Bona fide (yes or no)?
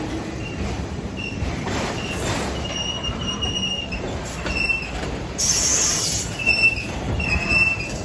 no